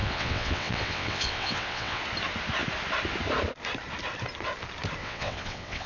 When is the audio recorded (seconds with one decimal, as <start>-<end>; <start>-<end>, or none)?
2.0-5.0